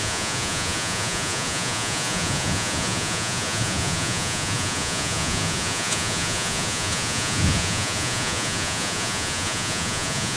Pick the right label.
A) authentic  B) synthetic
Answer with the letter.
B